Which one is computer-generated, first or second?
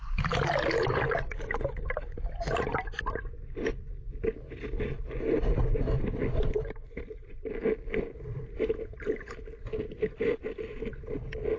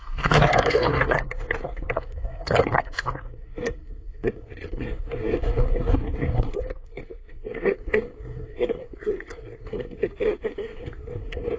second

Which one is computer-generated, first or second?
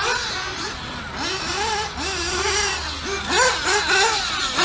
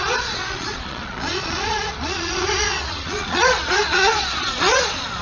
second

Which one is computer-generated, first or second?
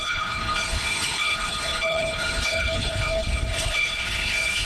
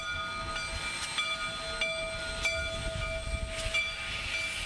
first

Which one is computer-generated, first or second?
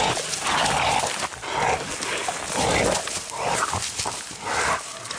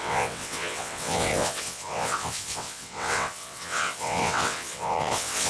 second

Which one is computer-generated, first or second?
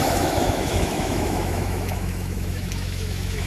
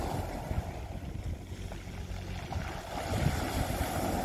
first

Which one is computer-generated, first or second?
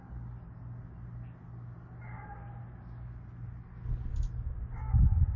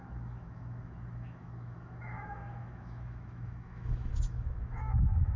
second